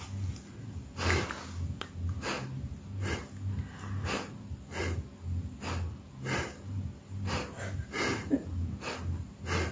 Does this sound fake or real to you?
real